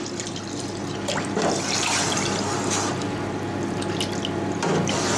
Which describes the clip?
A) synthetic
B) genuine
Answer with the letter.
B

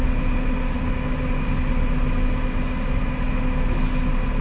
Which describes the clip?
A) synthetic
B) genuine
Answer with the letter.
B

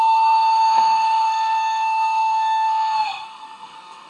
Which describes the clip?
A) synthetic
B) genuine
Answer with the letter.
A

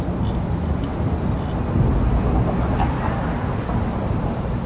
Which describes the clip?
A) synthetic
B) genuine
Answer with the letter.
B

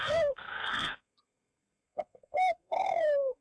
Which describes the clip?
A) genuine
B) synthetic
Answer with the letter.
B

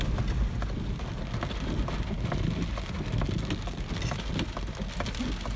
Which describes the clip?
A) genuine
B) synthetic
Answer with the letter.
A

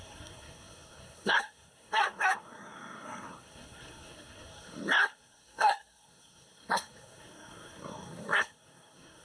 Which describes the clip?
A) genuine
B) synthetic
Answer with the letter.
B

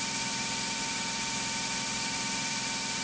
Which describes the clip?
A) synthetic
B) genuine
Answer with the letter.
B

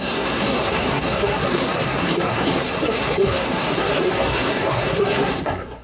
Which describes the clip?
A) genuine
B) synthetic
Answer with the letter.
B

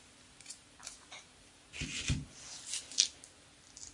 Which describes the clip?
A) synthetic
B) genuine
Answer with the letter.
B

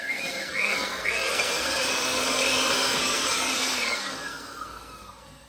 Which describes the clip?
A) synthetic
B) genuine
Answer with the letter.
A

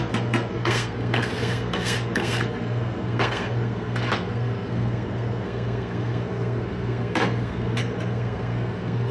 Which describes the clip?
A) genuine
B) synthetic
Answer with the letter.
B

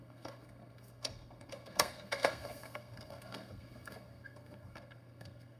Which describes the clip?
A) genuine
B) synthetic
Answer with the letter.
B